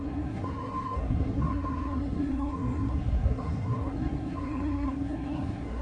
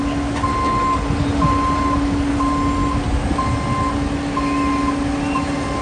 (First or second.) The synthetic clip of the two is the first